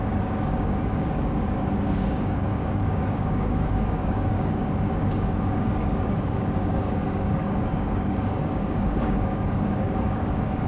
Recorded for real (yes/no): no